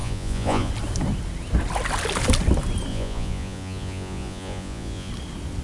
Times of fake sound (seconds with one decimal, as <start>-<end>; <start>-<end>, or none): 0.0-0.7; 2.9-5.1